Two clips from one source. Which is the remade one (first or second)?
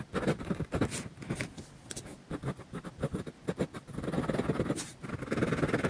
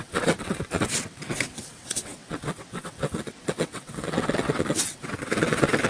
second